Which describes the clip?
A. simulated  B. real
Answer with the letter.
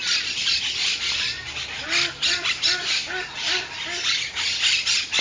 B